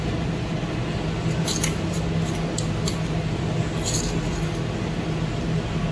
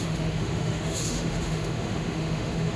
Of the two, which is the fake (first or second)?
second